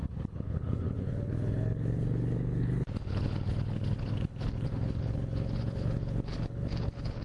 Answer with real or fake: fake